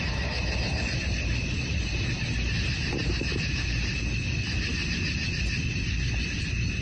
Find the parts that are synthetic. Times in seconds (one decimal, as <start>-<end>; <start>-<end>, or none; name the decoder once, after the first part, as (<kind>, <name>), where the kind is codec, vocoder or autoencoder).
none